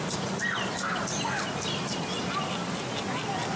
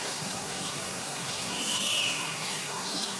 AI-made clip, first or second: second